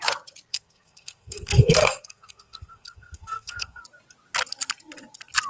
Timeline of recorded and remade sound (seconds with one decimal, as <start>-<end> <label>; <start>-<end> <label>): 0.0-0.5 recorded; 0.5-3.8 remade; 3.8-5.5 recorded